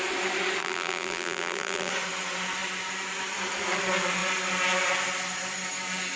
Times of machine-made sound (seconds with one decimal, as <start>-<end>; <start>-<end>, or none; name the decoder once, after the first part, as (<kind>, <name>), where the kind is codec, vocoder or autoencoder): 0.6-1.9 (vocoder, BigVGAN v2)